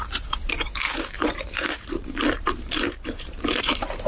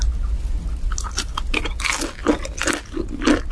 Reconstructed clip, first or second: first